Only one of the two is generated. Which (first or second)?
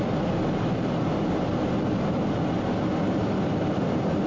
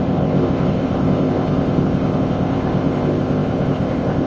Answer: second